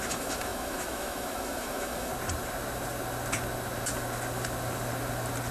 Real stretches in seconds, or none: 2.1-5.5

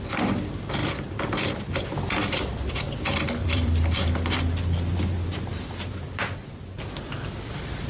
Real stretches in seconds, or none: 0.0-0.8; 2.7-3.4; 4.0-7.9

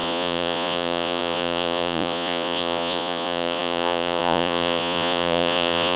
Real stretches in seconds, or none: none

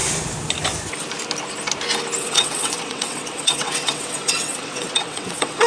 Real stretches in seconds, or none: 0.0-2.2

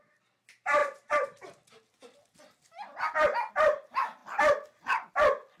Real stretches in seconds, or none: 0.0-5.6